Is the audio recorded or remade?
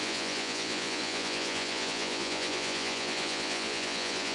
remade